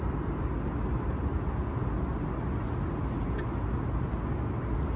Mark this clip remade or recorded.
recorded